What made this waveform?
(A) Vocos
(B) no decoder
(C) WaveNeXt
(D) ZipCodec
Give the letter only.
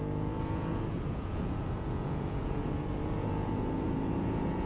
A